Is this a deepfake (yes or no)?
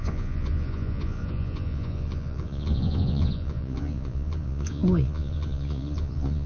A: yes